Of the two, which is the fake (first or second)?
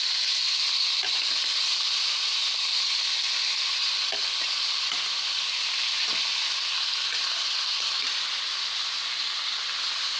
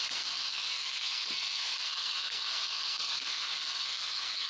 second